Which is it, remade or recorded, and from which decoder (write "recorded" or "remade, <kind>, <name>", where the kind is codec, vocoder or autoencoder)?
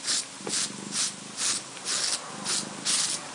recorded